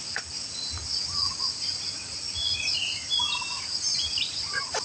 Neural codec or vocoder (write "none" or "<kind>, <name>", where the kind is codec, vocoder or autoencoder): none